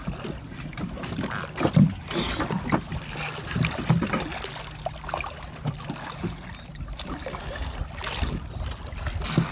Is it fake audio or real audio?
real